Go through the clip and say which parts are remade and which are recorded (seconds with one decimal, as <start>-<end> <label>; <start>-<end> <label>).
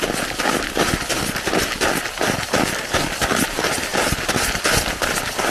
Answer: 0.0-5.5 recorded